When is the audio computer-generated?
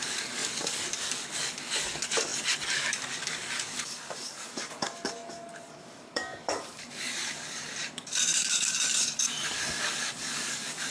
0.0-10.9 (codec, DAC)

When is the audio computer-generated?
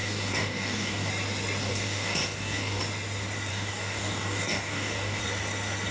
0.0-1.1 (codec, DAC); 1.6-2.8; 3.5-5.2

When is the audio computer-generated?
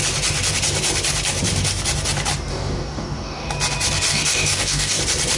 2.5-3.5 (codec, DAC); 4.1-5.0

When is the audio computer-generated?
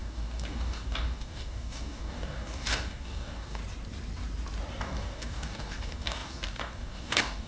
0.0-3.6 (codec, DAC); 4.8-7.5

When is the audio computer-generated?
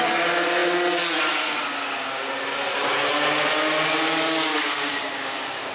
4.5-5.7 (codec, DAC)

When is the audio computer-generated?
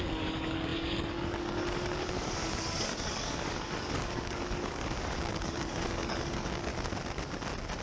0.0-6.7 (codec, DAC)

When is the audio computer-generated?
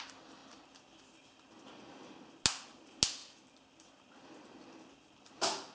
none